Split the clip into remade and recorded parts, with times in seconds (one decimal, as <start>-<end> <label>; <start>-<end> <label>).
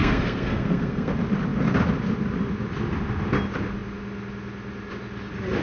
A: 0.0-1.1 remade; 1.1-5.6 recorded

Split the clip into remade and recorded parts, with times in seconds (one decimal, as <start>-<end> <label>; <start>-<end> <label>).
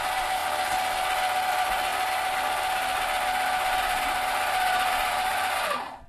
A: 0.0-0.4 remade; 0.4-1.5 recorded; 1.5-1.9 remade; 1.9-3.8 recorded; 3.8-6.1 remade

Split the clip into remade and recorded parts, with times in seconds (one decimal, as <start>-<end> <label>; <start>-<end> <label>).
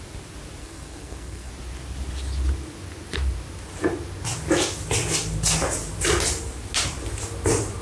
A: 0.0-0.6 recorded; 0.6-1.5 remade; 1.5-7.8 recorded